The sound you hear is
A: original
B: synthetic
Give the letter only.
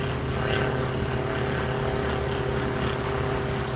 A